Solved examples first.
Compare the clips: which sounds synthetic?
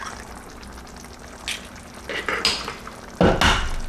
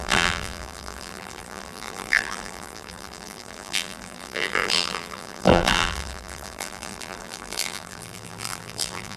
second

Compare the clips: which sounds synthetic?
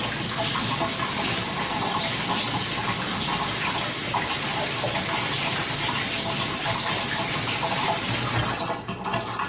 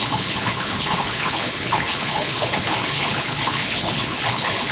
second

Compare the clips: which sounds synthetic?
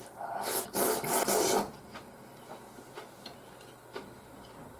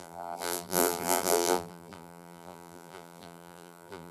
second